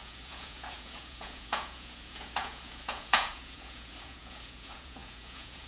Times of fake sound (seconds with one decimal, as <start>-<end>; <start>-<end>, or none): 0.0-5.7